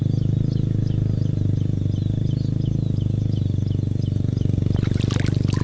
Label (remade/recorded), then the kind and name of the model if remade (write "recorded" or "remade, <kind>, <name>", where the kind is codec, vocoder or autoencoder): recorded